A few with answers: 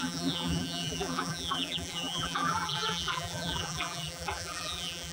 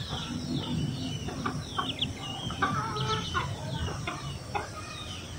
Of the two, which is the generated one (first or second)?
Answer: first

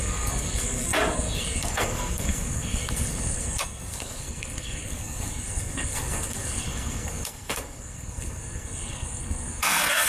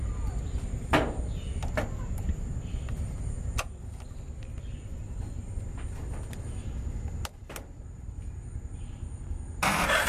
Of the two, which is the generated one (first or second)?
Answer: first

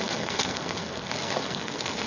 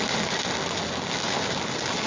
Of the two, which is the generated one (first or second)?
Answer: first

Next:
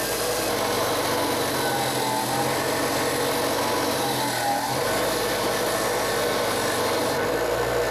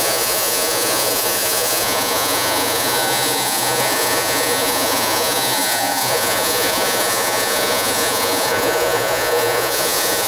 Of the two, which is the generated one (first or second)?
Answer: second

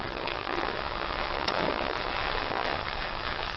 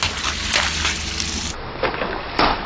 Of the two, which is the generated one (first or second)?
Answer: first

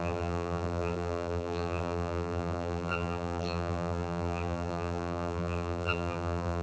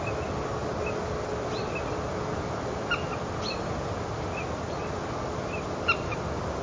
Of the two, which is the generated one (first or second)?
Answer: first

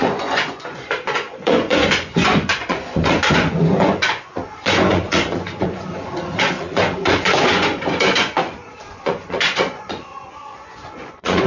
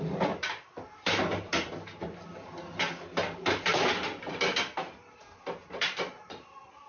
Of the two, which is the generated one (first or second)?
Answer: first